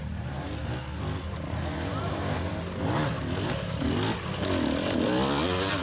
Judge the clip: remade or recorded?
recorded